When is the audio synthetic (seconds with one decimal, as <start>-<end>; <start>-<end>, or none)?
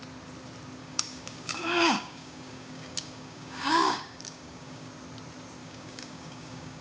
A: 0.8-4.9; 5.6-6.8